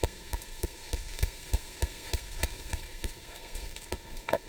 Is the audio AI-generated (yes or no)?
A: yes